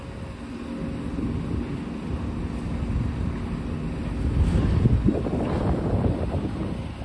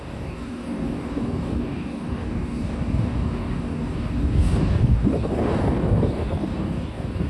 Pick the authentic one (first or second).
first